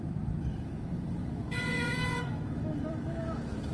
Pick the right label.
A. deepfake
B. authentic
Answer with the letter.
A